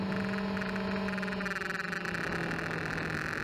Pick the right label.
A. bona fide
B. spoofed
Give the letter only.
A